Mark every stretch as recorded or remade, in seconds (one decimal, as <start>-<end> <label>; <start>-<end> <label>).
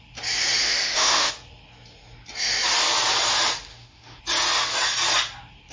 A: 0.0-0.6 recorded; 0.6-1.3 remade; 1.3-3.7 recorded; 3.7-4.2 remade; 4.2-5.7 recorded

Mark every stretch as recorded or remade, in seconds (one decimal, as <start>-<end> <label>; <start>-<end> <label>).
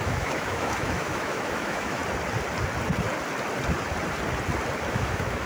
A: 0.0-2.0 remade; 2.0-4.9 recorded; 4.9-5.5 remade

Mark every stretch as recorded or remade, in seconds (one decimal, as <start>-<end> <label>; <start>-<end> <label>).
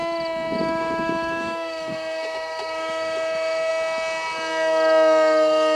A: 0.0-0.6 recorded; 0.6-3.7 remade; 3.7-5.8 recorded